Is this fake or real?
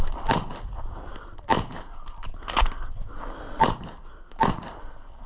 real